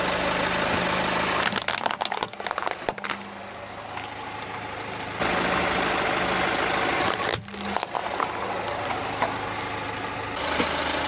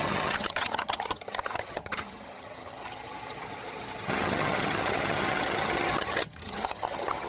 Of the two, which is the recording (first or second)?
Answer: first